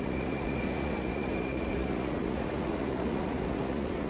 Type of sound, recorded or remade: remade